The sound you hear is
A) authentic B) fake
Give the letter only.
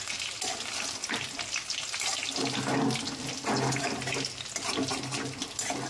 A